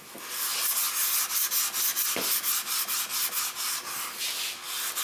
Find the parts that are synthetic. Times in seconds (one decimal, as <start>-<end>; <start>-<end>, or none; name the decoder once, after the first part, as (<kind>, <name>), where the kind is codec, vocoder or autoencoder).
none